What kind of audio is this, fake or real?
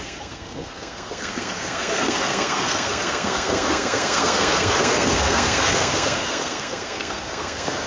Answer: fake